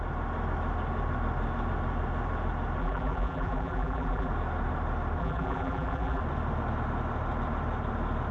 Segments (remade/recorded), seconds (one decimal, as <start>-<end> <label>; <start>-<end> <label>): 0.0-2.8 recorded; 2.8-4.3 remade; 4.3-5.2 recorded; 5.2-6.2 remade; 6.2-8.3 recorded